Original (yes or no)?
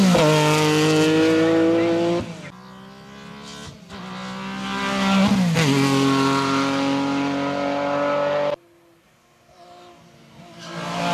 yes